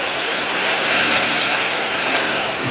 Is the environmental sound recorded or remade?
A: remade